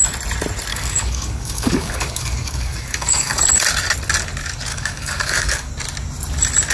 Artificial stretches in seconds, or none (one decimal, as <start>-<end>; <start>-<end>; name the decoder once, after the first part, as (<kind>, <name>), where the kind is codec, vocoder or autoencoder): 0.7-3.4 (codec, DAC); 4.7-5.7